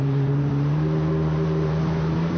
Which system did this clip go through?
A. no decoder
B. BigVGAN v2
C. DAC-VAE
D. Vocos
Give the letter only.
B